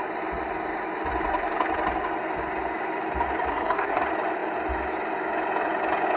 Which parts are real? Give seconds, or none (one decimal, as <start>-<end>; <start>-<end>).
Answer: 0.0-3.5; 4.0-6.2